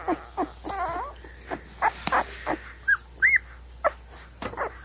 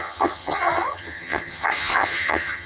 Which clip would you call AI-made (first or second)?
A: second